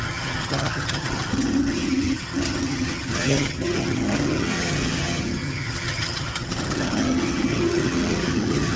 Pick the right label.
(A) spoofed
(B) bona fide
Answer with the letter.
A